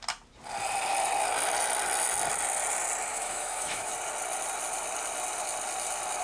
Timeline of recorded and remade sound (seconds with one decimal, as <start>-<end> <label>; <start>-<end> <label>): 0.0-3.1 recorded; 3.1-3.9 remade; 3.9-6.2 recorded